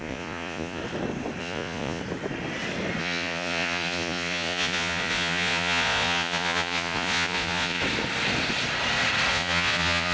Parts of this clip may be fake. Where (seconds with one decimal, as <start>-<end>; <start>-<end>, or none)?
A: 0.0-0.8; 1.4-2.0; 3.0-7.8; 9.3-10.1